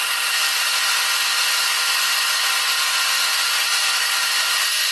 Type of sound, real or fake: fake